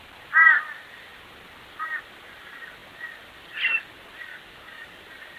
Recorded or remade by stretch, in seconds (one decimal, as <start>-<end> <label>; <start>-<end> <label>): 0.0-4.3 recorded; 4.3-5.0 remade; 5.0-5.4 recorded